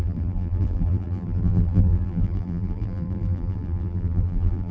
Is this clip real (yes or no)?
no